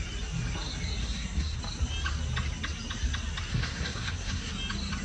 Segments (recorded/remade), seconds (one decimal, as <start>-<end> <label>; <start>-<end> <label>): 0.0-1.0 recorded; 1.0-1.6 remade; 1.6-3.5 recorded; 3.5-4.5 remade; 4.5-5.0 recorded